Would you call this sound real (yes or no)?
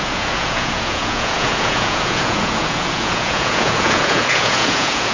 no